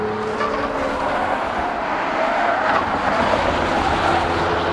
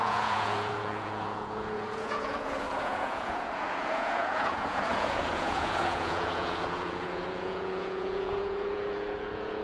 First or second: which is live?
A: first